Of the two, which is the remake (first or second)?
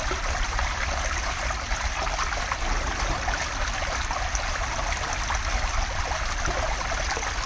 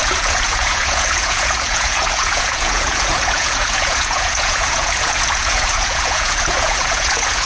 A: second